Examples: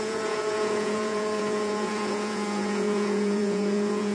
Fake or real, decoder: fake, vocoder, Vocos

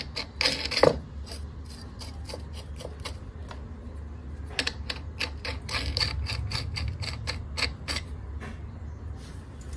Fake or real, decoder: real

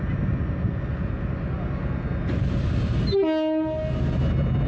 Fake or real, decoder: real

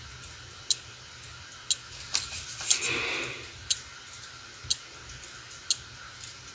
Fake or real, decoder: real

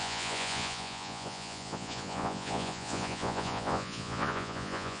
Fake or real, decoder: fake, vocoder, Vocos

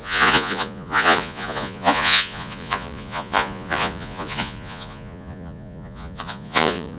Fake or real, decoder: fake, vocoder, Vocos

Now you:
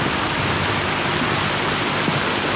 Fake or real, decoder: real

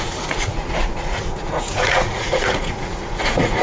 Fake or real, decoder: fake, vocoder, Vocos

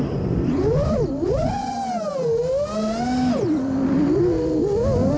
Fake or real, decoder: real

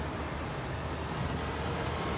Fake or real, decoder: real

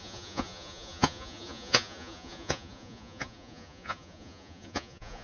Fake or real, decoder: fake, vocoder, Vocos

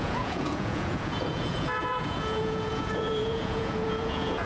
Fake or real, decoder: fake, vocoder, Vocos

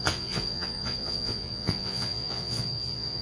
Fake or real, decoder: fake, vocoder, Vocos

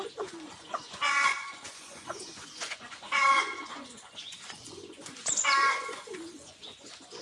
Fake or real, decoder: fake, vocoder, Vocos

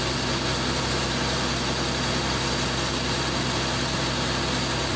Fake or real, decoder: real